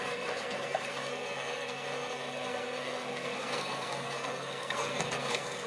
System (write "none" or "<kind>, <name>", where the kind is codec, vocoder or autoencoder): codec, SNAC